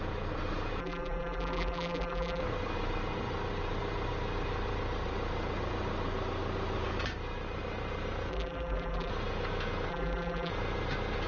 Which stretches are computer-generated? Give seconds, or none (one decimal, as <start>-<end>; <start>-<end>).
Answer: 0.8-2.4; 8.3-9.1; 9.9-10.5